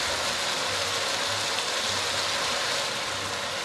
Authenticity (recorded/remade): recorded